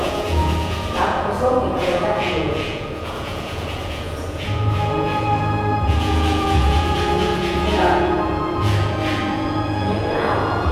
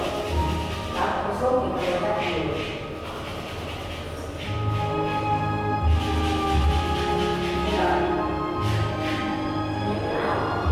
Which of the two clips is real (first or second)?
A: second